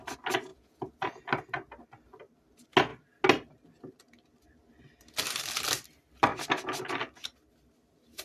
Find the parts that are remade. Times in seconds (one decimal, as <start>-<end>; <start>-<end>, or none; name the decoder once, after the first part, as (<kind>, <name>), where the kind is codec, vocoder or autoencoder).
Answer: 0.5-1.2 (vocoder, Vocos)